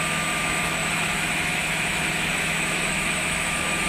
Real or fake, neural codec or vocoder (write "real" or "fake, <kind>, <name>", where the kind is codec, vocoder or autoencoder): fake, autoencoder, DAC-VAE